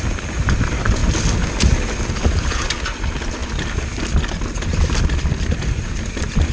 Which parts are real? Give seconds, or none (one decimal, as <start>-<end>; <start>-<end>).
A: 0.0-6.5